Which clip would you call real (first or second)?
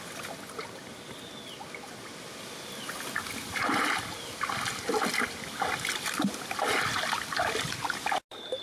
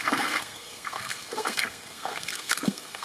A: first